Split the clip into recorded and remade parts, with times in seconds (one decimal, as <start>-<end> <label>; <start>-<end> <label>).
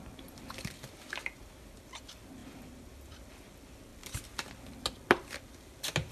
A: 0.0-6.1 recorded